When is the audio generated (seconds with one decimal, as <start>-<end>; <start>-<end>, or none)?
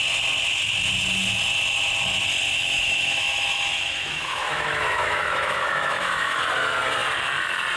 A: 2.5-6.4